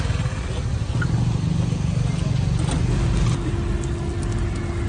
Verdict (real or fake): real